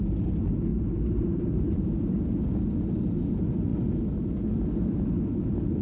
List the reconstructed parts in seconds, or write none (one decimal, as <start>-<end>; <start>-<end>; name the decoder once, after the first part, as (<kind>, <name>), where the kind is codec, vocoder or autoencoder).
0.7-2.3 (vocoder, BigVGAN v2)